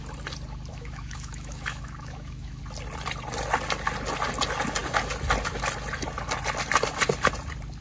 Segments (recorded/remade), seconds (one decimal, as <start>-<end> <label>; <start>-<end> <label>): 0.0-0.7 recorded; 0.7-2.6 remade; 2.6-7.8 recorded